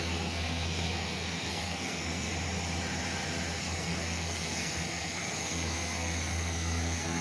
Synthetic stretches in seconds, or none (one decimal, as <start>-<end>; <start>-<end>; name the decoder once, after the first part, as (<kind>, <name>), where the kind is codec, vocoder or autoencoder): 0.0-2.3 (codec, SNAC); 3.6-7.2